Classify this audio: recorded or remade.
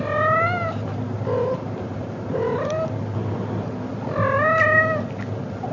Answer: recorded